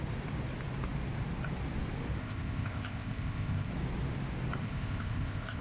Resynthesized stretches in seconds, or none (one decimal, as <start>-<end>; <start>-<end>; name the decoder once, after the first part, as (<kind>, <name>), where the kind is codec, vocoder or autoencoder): 2.2-3.7 (codec, ZipCodec); 4.6-5.6